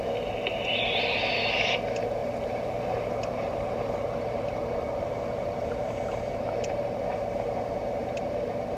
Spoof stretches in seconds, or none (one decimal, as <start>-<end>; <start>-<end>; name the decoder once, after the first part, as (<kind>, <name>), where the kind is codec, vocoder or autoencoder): 2.2-7.0 (vocoder, BigVGAN v2); 8.0-8.8